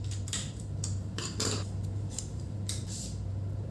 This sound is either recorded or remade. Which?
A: remade